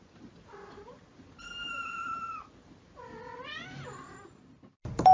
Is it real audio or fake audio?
real